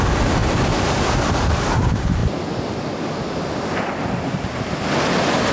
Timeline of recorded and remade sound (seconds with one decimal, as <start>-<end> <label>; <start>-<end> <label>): 0.0-5.5 recorded